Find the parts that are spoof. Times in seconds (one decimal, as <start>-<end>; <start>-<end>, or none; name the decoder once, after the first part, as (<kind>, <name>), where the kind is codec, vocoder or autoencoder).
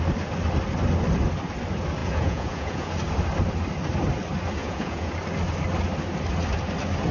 2.0-2.9 (vocoder, Vocos); 4.6-5.1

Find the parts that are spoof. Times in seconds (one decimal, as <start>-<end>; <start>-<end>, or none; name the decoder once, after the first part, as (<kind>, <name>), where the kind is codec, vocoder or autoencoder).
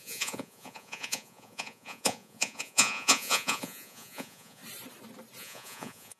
0.0-4.6 (vocoder, Vocos); 5.4-6.2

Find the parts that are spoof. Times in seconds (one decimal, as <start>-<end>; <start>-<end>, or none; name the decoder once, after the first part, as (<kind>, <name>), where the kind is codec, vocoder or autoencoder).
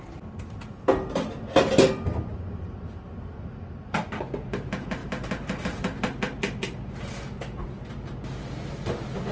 none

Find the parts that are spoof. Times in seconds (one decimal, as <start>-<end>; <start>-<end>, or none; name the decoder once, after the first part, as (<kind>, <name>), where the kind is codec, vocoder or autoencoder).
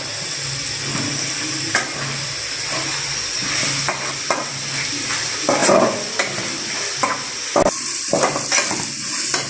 none